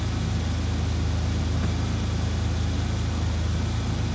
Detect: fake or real real